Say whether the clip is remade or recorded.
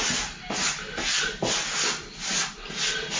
recorded